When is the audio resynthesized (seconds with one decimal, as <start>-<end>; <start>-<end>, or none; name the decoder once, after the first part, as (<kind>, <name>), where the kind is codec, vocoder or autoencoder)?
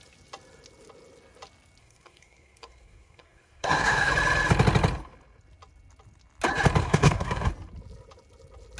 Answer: 1.8-4.1 (codec, SNAC); 6.8-7.5